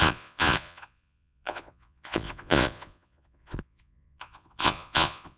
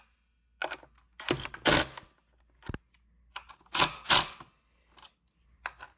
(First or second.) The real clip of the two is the second